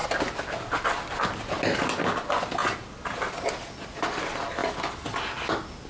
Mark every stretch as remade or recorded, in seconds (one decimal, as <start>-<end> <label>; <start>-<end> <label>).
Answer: 0.0-2.2 recorded; 2.2-2.6 remade; 2.6-3.5 recorded; 3.5-4.6 remade; 4.6-5.9 recorded